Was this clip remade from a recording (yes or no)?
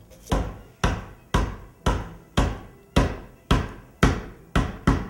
no